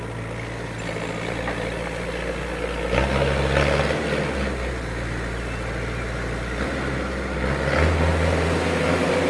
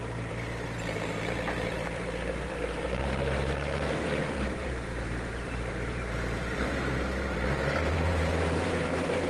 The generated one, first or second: second